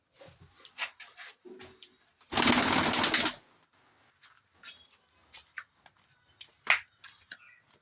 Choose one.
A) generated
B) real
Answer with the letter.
B